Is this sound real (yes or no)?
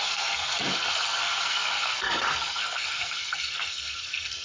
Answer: no